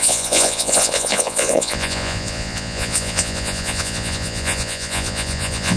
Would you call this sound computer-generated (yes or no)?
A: yes